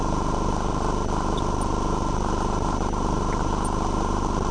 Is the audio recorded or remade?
recorded